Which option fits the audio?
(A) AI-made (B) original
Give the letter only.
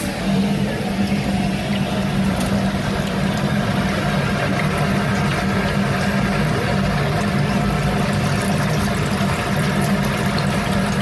B